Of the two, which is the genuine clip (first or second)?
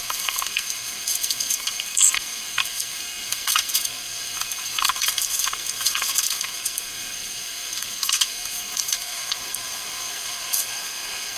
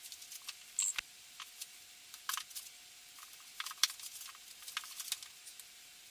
second